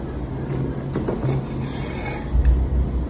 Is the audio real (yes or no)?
yes